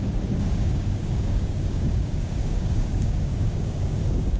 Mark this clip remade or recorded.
remade